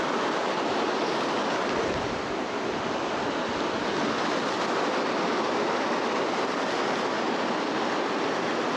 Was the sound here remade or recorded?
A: recorded